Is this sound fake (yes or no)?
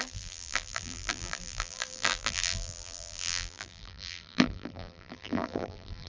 yes